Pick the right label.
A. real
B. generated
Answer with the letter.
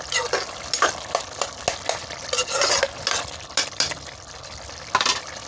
A